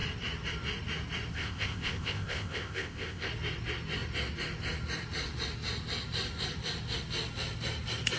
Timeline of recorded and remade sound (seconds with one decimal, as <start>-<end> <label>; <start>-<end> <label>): 0.0-1.3 recorded; 1.3-3.3 remade; 3.3-8.2 recorded